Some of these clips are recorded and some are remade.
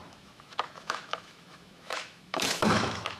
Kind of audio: remade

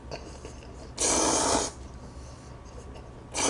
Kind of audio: recorded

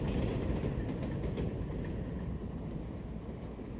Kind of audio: recorded